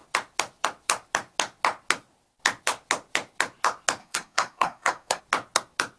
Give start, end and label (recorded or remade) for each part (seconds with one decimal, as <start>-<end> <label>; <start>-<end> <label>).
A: 0.0-4.0 recorded; 4.0-5.2 remade; 5.2-6.0 recorded